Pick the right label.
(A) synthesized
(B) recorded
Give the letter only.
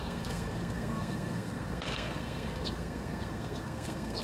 A